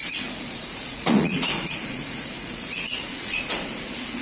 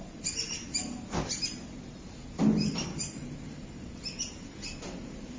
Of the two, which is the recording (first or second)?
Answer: second